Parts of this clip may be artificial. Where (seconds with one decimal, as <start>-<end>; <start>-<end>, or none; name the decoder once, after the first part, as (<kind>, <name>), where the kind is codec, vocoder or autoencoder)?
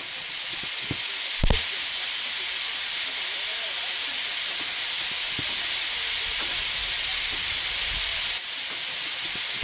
3.5-4.8 (vocoder, Vocos); 8.1-8.6